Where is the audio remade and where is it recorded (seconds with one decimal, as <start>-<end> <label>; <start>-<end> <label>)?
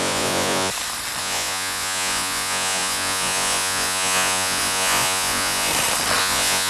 0.0-0.7 remade; 0.7-1.2 recorded; 1.2-5.7 remade; 5.7-6.2 recorded; 6.2-6.7 remade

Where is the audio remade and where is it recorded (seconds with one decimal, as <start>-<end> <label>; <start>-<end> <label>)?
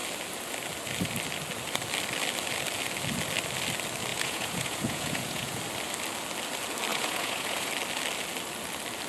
0.0-4.1 recorded; 4.1-5.6 remade; 5.6-6.9 recorded; 6.9-7.7 remade; 7.7-9.1 recorded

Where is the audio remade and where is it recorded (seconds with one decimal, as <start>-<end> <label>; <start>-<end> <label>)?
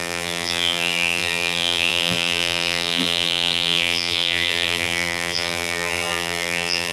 0.0-6.9 remade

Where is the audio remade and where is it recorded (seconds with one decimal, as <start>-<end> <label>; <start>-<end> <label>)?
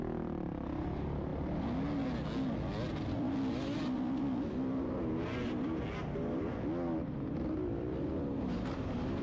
0.0-9.2 recorded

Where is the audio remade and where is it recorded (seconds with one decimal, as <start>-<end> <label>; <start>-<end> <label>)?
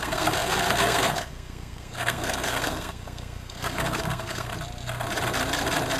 0.0-4.5 remade; 4.5-6.0 recorded